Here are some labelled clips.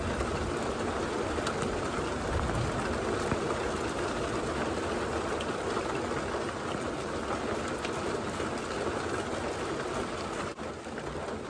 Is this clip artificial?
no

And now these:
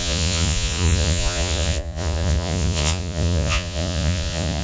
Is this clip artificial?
yes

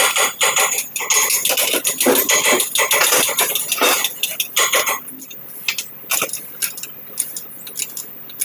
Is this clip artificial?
no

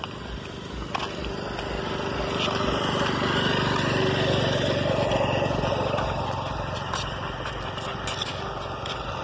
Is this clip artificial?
no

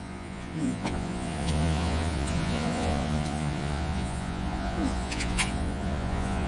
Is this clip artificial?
yes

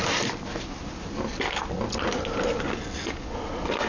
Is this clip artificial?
no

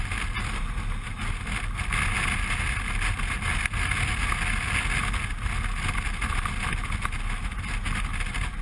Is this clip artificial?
no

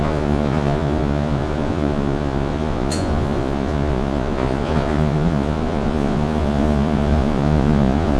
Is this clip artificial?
yes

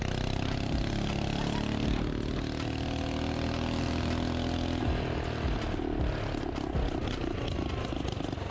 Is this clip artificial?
no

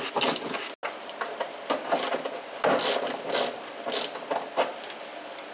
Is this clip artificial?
no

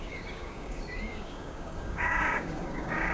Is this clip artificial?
yes